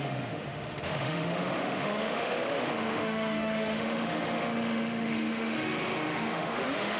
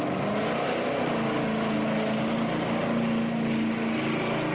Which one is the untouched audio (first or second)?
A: second